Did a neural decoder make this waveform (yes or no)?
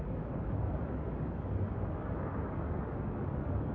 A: yes